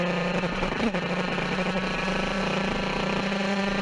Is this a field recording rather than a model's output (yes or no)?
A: no